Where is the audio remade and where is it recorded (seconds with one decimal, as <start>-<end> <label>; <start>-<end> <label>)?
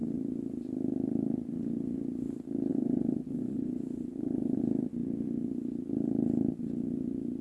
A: 0.0-2.7 recorded; 2.7-4.6 remade; 4.6-7.4 recorded